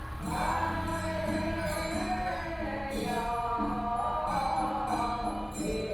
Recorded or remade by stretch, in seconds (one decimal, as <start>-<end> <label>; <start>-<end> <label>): 0.0-5.9 recorded